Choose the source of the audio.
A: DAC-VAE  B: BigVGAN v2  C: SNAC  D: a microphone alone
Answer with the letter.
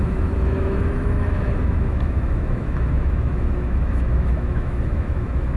A